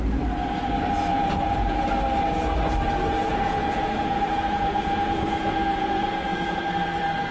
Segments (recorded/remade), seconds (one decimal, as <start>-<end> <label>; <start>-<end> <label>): 0.0-1.1 recorded; 1.1-1.9 remade; 1.9-3.2 recorded; 3.2-6.6 remade; 6.6-7.3 recorded